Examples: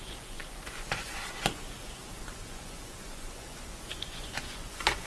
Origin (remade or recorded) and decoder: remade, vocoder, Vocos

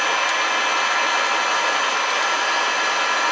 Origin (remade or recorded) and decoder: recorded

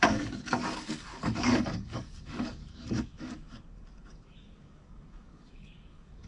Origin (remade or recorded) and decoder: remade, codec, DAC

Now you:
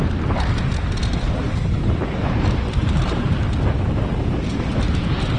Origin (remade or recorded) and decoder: recorded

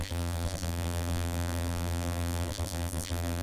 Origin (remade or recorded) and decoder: remade, vocoder, BigVGAN v2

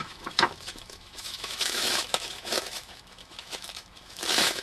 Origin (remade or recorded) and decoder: remade, autoencoder, DAC-VAE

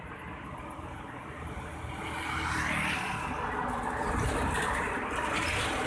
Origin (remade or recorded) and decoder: recorded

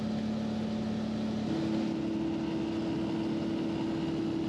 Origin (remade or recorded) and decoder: recorded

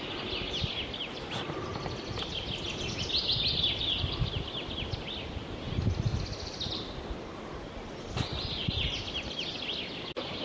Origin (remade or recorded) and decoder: recorded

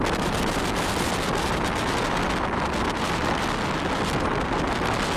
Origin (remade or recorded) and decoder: recorded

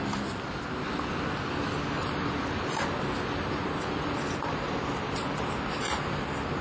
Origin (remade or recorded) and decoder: recorded